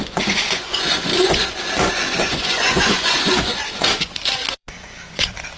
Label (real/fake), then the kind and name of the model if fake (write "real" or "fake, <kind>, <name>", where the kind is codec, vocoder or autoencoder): fake, vocoder, Vocos